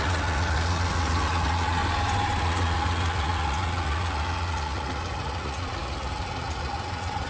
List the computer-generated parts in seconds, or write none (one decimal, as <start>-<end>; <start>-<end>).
0.0-1.8; 2.4-7.3